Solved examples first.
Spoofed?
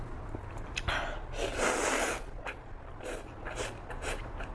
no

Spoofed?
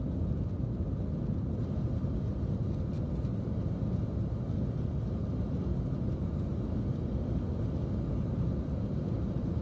no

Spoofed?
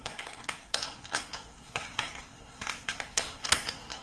yes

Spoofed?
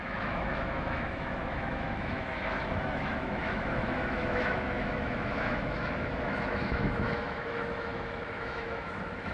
yes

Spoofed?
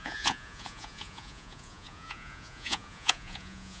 yes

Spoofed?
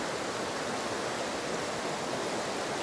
no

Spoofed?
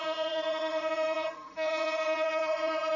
yes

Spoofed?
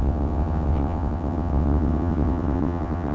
yes